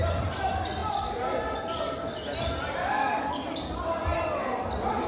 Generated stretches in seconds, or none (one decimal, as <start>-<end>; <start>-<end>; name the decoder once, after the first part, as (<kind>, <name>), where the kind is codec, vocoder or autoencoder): 2.8-3.3 (codec, DAC)